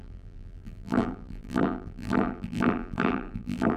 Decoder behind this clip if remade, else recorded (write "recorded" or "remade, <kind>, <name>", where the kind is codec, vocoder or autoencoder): remade, vocoder, BigVGAN v2